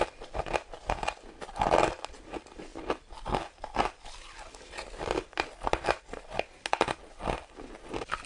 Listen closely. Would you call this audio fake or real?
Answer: real